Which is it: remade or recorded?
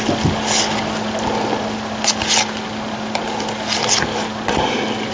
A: recorded